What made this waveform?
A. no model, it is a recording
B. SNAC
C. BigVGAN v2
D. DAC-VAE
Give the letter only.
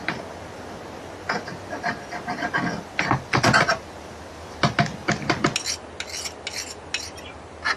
A